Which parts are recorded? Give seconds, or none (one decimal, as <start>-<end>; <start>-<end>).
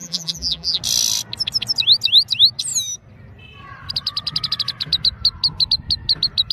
0.8-6.5